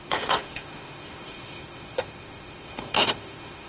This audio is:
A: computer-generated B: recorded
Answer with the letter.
A